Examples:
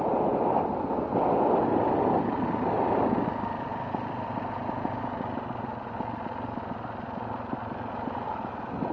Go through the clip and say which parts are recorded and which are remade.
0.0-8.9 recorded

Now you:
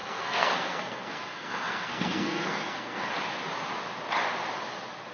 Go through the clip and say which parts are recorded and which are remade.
0.0-3.1 remade; 3.1-5.1 recorded

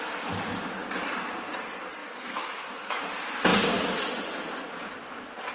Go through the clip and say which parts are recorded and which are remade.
0.0-2.0 recorded; 2.0-3.0 remade; 3.0-5.5 recorded

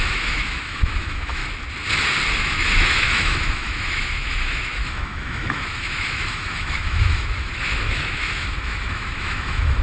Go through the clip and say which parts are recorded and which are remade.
0.0-1.4 remade; 1.4-2.4 recorded; 2.4-9.8 remade

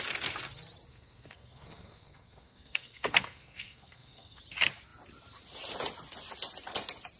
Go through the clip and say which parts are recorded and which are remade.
0.0-0.9 recorded; 0.9-4.4 remade; 4.4-7.2 recorded

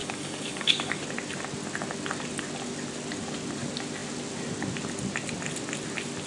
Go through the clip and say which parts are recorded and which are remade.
0.0-1.0 remade; 1.0-6.3 recorded

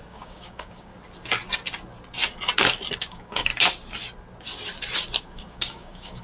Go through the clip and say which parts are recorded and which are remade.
0.0-0.9 remade; 0.9-3.1 recorded; 3.1-3.5 remade; 3.5-5.2 recorded; 5.2-6.2 remade

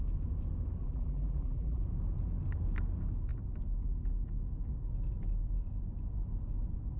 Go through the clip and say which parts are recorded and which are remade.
0.0-0.8 recorded; 0.8-1.8 remade; 1.8-7.0 recorded